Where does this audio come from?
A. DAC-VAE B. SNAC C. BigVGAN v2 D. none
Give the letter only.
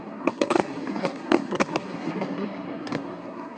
B